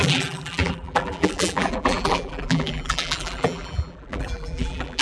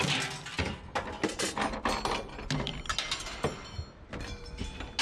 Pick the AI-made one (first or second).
first